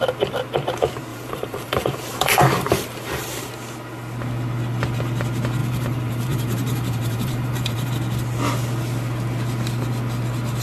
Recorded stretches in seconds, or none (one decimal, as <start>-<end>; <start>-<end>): 0.0-1.1; 3.5-5.6; 7.9-10.6